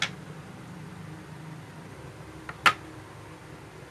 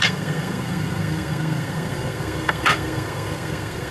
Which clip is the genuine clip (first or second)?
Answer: first